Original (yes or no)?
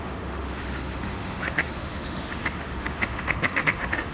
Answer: no